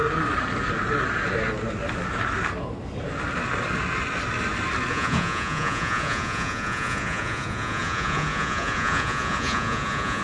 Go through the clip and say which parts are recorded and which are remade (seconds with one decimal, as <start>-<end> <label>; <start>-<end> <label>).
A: 0.0-4.9 recorded; 4.9-10.2 remade